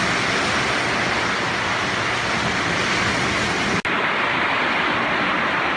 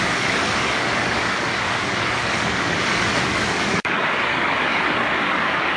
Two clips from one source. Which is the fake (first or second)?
second